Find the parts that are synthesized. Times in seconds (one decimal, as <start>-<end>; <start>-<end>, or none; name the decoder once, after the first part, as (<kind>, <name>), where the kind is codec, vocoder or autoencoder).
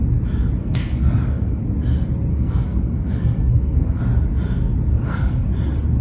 0.6-1.6 (codec, SNAC); 2.3-4.0; 4.9-5.5